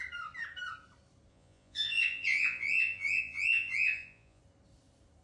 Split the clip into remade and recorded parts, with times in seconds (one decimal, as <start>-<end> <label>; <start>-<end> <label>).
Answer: 0.0-1.3 recorded; 1.3-4.4 remade; 4.4-5.2 recorded